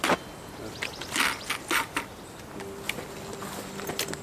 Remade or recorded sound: recorded